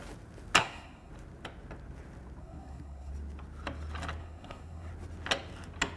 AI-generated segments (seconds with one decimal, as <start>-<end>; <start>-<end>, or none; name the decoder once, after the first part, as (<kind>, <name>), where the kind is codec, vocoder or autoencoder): 0.6-1.1 (codec, SNAC); 2.4-3.1; 4.2-4.9